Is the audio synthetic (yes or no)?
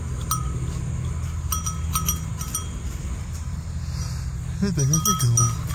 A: no